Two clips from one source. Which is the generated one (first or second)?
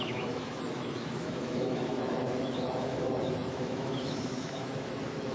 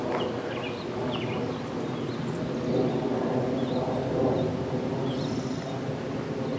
first